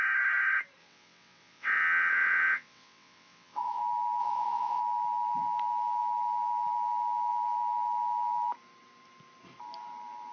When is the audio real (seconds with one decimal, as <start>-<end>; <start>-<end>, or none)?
0.0-0.8; 3.8-4.2; 4.8-10.3